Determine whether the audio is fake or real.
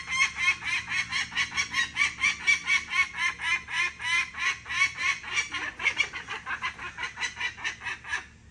real